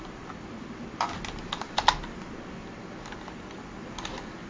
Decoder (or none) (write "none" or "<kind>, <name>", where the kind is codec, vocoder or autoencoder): none